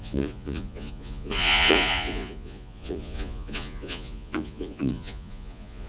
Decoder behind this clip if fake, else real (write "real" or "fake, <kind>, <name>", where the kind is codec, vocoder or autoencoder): fake, vocoder, Vocos